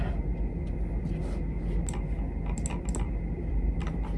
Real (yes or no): yes